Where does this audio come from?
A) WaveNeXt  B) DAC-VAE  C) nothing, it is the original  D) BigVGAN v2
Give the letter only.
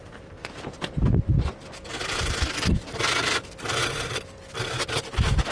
D